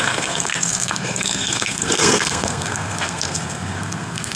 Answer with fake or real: fake